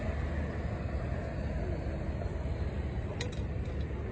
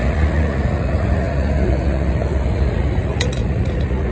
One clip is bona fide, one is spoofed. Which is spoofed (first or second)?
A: second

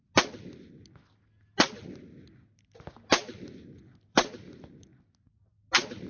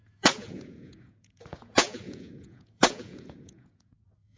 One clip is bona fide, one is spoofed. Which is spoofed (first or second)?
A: second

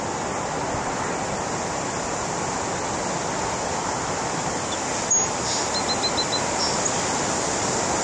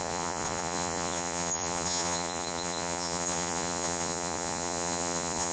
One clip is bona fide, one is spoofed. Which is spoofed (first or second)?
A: second